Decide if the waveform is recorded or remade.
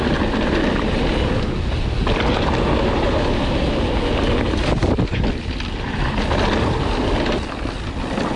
recorded